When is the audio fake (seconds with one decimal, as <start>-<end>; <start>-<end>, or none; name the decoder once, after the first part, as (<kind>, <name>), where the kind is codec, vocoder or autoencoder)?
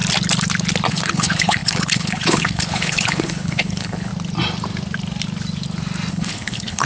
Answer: 0.9-4.1 (codec, HILCodec); 6.1-6.9